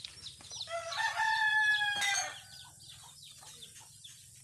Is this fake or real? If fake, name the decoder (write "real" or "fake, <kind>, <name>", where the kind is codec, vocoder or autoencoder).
real